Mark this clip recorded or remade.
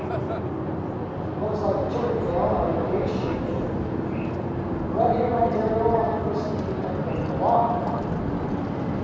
recorded